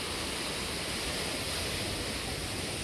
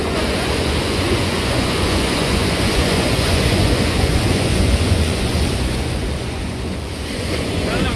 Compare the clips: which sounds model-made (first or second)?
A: second